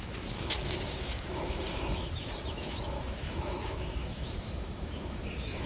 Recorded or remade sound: remade